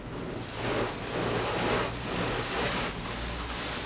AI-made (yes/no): no